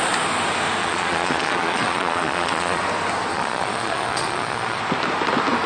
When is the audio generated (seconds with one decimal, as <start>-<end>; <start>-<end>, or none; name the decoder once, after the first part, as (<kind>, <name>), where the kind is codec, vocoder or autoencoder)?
0.8-2.8 (vocoder, Vocos); 3.3-4.8